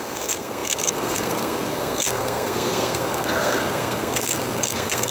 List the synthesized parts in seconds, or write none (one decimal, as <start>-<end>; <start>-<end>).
0.0-5.1